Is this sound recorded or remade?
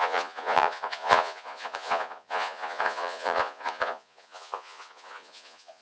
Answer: remade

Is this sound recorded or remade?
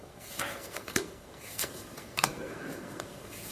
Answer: remade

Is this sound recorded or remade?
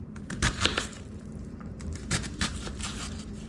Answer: remade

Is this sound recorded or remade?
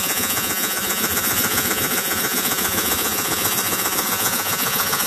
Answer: remade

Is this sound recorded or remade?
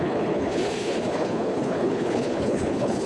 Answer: remade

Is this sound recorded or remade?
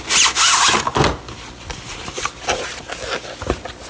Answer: recorded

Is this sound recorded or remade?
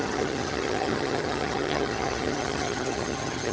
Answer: remade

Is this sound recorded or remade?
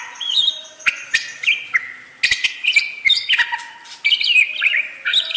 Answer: recorded